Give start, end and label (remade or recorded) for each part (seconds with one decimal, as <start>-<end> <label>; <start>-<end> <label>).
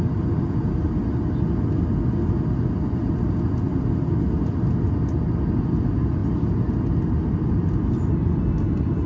0.0-9.1 recorded